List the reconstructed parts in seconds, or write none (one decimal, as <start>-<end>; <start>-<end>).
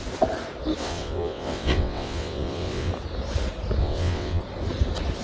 0.8-2.9; 3.8-4.4